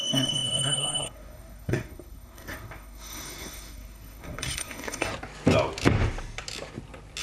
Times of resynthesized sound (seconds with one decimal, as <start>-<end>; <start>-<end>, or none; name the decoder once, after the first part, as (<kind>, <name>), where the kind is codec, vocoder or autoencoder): 0.0-5.1 (codec, SNAC)